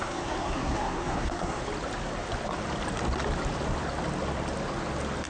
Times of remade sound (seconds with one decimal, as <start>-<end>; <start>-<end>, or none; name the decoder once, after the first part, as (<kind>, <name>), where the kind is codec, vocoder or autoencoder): 0.0-1.6 (codec, SNAC)